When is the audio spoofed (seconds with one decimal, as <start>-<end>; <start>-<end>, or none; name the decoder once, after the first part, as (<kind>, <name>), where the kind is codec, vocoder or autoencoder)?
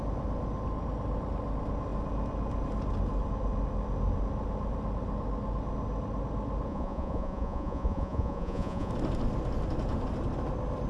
6.7-8.9 (vocoder, Vocos)